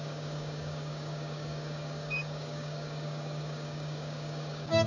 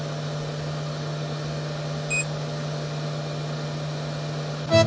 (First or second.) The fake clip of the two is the first